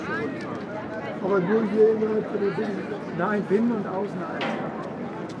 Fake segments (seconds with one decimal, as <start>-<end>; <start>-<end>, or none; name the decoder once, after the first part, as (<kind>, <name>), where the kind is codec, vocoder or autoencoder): 1.9-2.9 (vocoder, BigVGAN v2)

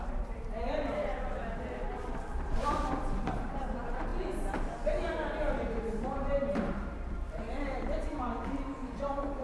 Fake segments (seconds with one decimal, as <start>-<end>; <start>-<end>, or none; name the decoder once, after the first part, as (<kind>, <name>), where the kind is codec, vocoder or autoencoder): 0.0-4.1 (vocoder, BigVGAN v2); 5.8-9.4

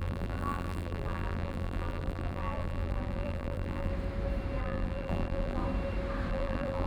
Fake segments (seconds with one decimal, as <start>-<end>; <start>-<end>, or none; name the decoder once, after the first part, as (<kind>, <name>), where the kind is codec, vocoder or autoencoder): 0.0-3.9 (vocoder, BigVGAN v2); 4.6-5.6; 6.3-6.9

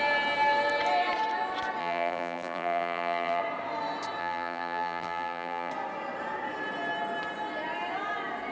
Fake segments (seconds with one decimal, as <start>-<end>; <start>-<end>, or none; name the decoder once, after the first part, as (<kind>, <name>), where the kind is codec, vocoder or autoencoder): 1.8-3.4 (vocoder, BigVGAN v2); 4.2-5.7

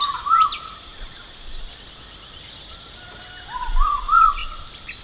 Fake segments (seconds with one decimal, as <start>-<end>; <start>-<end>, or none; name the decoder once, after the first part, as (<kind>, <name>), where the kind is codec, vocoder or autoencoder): 0.9-2.0 (vocoder, BigVGAN v2)

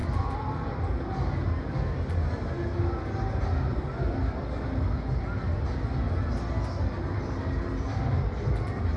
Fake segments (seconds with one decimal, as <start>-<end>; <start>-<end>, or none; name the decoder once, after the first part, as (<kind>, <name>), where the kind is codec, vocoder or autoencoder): 0.0-0.8 (vocoder, BigVGAN v2); 3.7-4.8

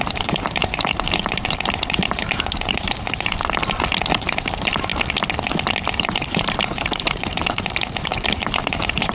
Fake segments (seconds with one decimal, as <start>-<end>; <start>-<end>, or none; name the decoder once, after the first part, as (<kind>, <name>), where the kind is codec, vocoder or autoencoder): 0.0-3.4 (vocoder, BigVGAN v2); 4.1-4.9; 6.0-9.1

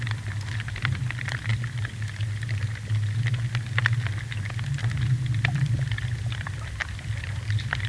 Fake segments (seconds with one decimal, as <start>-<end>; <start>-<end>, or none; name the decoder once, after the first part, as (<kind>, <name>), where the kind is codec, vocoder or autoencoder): 4.8-7.9 (vocoder, BigVGAN v2)